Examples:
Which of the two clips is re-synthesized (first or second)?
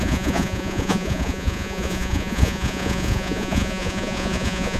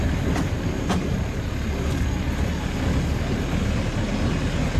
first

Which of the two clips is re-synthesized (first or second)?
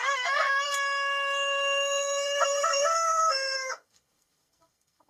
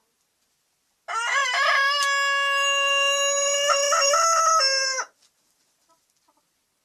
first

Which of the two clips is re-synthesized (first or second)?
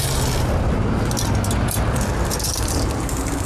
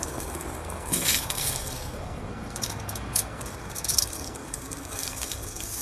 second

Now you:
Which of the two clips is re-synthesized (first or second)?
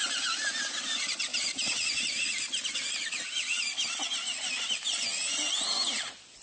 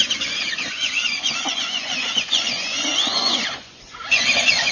second